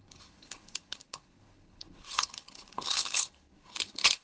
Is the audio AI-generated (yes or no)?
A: yes